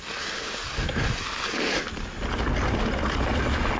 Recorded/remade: recorded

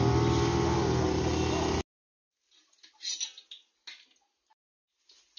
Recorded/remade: recorded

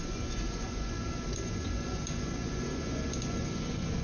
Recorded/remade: remade